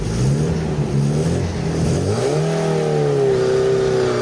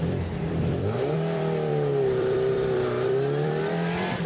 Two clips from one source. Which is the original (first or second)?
first